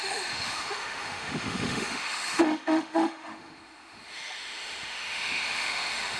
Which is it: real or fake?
fake